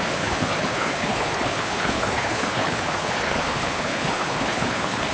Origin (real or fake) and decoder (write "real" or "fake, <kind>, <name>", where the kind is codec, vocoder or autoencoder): fake, codec, HILCodec